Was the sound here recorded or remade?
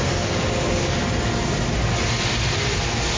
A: recorded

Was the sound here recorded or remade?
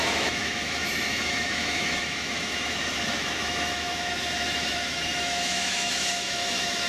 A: remade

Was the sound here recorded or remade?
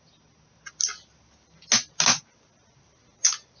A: recorded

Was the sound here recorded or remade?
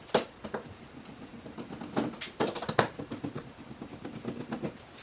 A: recorded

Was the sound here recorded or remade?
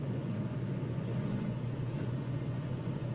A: remade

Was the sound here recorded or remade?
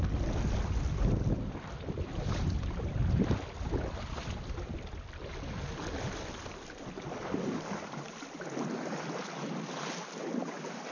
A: recorded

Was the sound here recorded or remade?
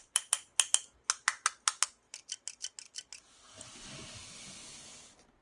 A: recorded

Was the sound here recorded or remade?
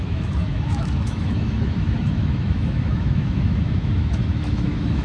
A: remade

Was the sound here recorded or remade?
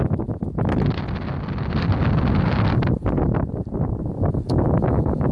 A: recorded